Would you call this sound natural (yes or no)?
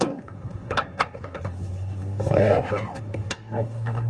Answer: no